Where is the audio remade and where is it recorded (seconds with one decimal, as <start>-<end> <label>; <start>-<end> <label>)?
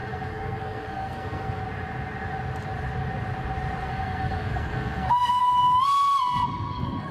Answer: 0.0-1.6 remade; 1.6-3.8 recorded; 3.8-5.4 remade; 5.4-6.5 recorded; 6.5-7.1 remade